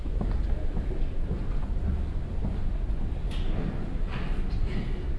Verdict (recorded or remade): recorded